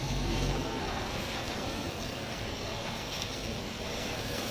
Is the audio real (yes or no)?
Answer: no